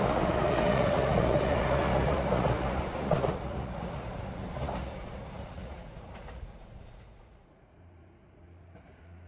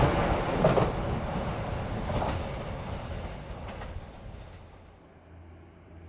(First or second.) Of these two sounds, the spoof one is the first